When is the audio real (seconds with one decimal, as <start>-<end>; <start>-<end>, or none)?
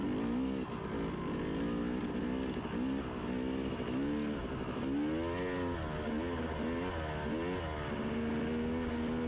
0.0-9.3